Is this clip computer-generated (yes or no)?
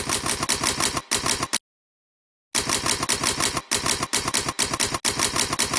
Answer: no